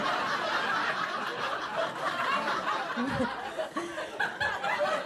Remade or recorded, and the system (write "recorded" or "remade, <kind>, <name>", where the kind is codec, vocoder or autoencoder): recorded